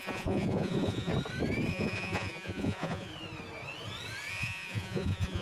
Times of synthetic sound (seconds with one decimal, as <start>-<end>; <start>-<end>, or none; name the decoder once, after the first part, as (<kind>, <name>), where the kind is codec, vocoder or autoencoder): 0.0-1.1 (vocoder, Vocos); 1.7-3.1; 4.3-5.4

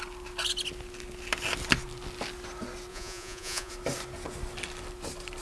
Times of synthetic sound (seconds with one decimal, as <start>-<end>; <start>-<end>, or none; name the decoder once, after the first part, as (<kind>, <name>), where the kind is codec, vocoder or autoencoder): 2.9-3.7 (vocoder, Vocos)